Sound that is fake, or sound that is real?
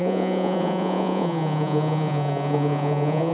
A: fake